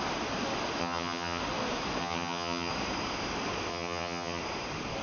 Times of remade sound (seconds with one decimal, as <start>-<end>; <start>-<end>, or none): 0.8-1.4; 2.0-2.7; 3.7-4.4